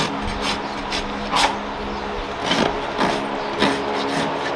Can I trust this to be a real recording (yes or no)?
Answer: yes